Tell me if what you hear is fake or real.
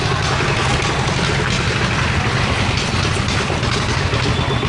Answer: real